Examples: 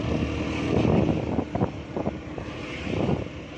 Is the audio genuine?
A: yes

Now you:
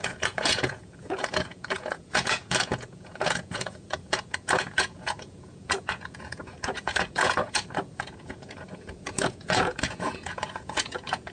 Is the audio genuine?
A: no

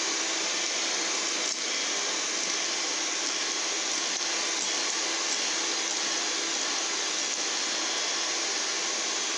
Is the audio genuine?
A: yes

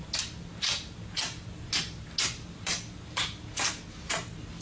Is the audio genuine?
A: yes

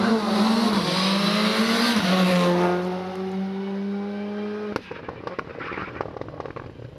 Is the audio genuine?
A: yes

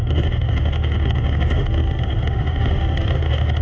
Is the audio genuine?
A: no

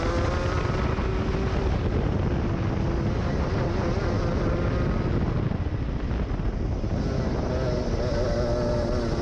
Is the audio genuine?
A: yes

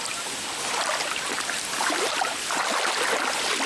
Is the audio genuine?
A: yes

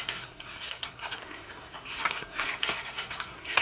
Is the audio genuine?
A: no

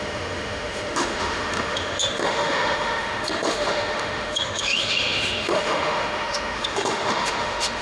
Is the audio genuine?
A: no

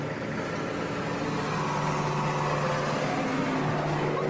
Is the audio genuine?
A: yes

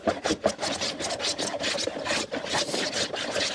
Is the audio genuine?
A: yes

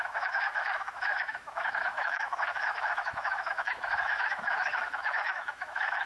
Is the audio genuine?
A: no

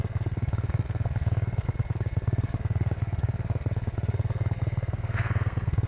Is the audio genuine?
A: no